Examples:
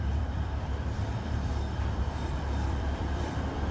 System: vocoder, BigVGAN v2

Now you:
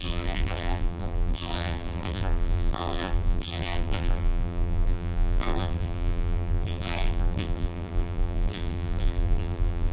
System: vocoder, BigVGAN v2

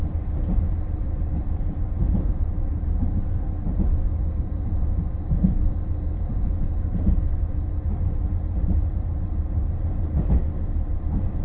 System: vocoder, BigVGAN v2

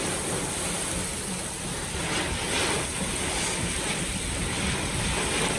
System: none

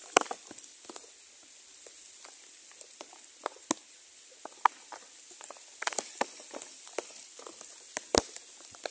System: none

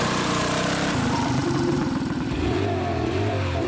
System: vocoder, BigVGAN v2